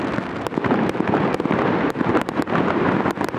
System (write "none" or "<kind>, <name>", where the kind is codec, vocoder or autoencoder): none